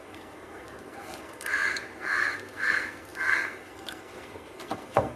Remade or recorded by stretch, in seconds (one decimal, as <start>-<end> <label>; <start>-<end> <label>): 0.0-5.2 remade